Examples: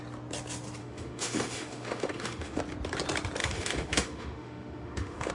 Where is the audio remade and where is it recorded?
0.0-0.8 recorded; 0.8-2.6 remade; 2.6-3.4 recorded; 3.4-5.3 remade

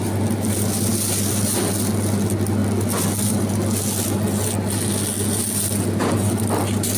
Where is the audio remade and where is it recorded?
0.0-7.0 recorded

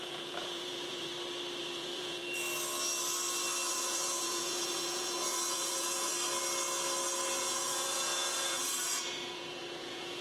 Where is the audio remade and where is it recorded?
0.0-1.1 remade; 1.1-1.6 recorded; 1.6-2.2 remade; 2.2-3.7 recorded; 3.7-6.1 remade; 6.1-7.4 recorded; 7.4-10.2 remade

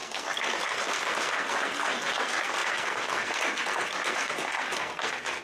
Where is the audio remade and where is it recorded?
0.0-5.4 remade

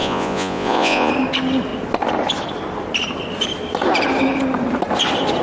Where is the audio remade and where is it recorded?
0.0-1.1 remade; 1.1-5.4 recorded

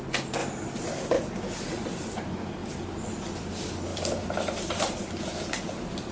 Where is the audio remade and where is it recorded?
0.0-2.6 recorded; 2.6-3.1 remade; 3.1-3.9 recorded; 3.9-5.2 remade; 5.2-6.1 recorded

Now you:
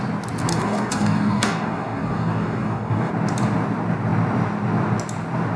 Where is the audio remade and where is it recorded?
0.0-0.5 recorded; 0.5-3.1 remade; 3.1-5.6 recorded